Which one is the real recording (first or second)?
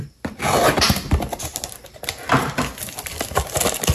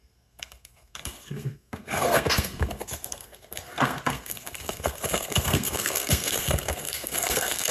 first